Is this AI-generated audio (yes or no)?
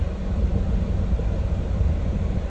no